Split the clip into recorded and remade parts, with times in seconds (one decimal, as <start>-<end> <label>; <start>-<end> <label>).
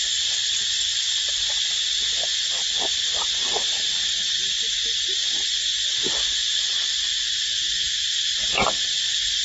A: 0.0-0.4 remade; 0.4-1.0 recorded; 1.0-5.7 remade; 5.7-7.8 recorded; 7.8-9.4 remade